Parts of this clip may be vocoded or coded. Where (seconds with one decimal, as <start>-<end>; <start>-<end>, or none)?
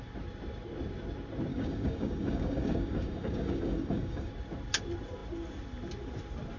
1.5-4.3